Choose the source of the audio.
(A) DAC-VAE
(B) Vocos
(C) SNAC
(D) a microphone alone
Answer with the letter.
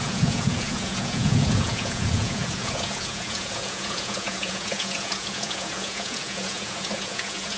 B